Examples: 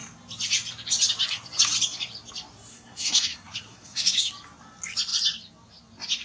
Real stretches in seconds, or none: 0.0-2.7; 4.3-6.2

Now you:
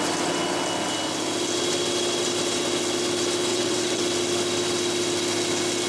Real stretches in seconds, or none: 0.0-3.5; 4.0-5.9

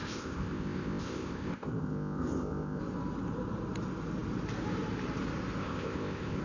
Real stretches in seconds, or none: 2.8-5.6

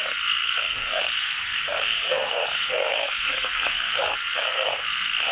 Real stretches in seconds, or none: none

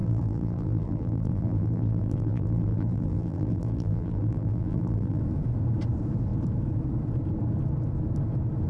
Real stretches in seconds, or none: 5.2-8.7

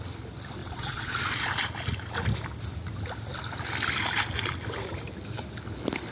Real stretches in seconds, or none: 0.0-0.6; 1.5-6.1